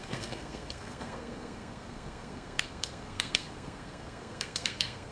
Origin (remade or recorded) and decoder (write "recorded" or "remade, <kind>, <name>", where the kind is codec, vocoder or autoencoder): remade, codec, SNAC